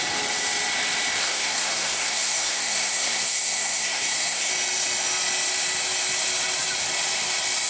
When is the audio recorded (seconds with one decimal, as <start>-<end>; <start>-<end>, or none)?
0.0-1.2; 4.5-7.7